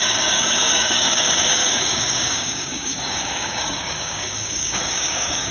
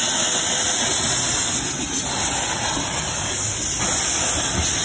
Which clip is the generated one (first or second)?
first